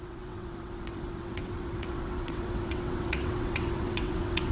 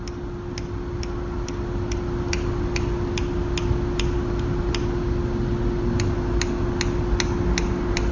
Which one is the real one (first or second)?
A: second